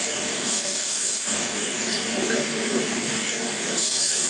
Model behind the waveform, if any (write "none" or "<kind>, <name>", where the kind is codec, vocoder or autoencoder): codec, DAC